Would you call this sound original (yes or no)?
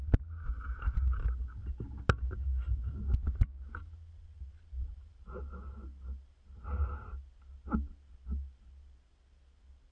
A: yes